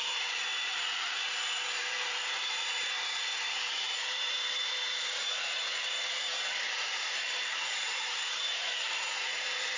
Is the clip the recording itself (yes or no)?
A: no